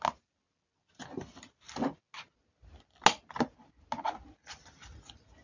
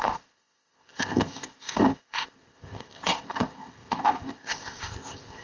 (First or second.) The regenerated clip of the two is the second